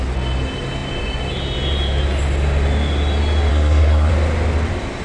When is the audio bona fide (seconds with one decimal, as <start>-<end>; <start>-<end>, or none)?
0.0-3.5; 4.1-5.0